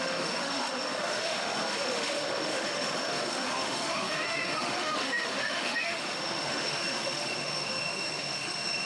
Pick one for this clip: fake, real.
fake